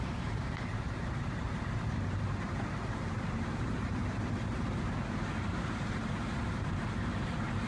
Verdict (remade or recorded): remade